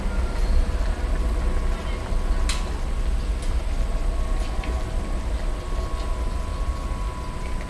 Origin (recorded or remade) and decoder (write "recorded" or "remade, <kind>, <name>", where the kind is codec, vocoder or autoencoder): recorded